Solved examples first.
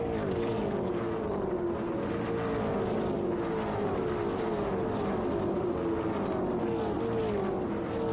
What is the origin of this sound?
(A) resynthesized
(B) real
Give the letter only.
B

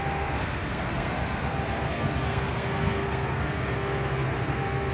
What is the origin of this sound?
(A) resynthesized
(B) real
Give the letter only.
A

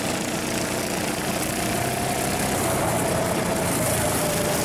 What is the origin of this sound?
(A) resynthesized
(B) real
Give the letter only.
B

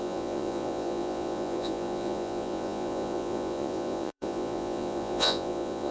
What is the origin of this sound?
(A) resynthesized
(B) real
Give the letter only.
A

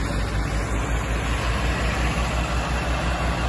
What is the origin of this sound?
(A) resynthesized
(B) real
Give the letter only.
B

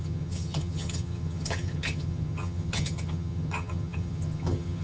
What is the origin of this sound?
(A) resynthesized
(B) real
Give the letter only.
A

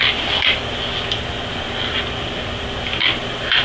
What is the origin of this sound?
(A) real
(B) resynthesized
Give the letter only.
A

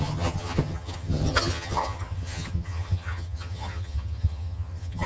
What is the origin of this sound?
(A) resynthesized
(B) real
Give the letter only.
A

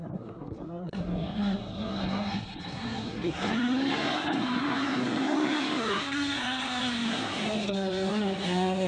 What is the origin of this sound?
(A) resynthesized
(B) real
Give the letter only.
A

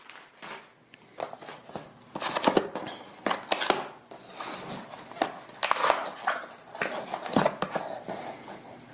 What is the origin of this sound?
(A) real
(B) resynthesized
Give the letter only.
A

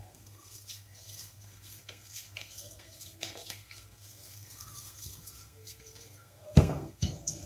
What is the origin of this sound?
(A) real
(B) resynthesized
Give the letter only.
B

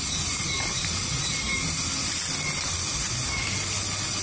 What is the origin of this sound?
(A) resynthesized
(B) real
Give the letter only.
B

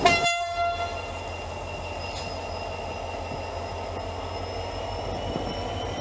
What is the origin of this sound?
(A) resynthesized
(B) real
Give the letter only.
B